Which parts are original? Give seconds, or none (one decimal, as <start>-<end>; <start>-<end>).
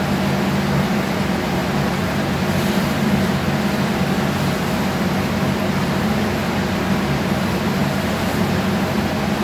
0.0-9.4